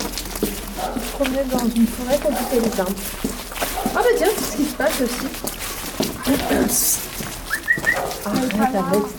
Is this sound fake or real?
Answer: real